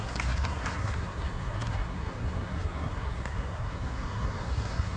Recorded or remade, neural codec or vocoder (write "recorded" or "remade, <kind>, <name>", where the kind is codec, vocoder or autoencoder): remade, codec, SNAC